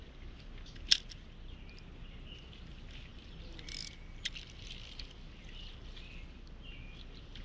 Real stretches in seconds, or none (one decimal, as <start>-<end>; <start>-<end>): 0.0-7.4